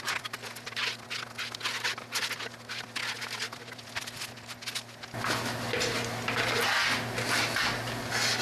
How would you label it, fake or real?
real